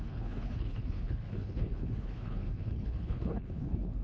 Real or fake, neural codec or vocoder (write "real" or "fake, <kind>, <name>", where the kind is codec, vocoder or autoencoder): fake, codec, HILCodec